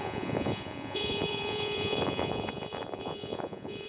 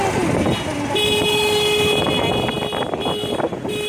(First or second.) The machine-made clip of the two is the first